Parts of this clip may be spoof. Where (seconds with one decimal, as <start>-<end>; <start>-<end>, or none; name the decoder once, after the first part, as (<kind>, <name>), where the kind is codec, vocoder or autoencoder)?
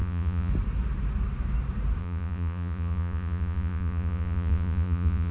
0.0-0.5 (vocoder, Vocos); 2.0-5.3